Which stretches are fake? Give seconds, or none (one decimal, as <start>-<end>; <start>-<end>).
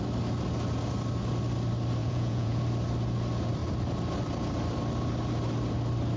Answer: 2.0-2.6